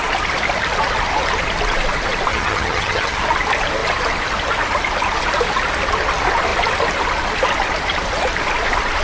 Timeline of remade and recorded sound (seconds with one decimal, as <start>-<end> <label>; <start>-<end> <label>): 0.0-2.3 recorded; 2.3-3.2 remade; 3.2-9.0 recorded